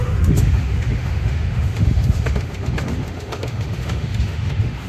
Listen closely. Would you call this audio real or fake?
fake